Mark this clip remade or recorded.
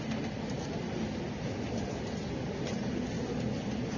recorded